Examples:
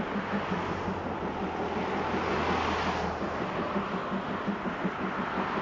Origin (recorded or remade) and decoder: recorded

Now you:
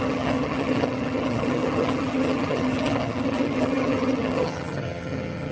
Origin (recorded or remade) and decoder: remade, vocoder, HiFi-GAN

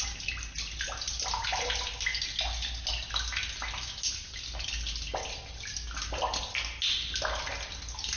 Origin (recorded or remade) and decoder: recorded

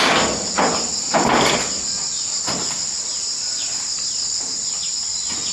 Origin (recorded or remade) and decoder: recorded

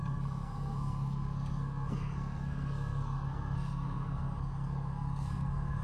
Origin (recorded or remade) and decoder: remade, codec, SNAC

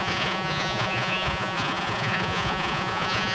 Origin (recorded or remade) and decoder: remade, vocoder, Vocos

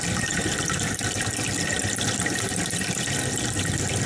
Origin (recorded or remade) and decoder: recorded